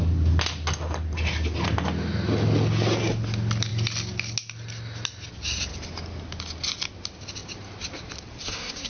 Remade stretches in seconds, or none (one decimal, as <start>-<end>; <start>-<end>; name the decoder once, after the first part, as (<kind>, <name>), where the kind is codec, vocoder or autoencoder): 8.4-8.9 (codec, SNAC)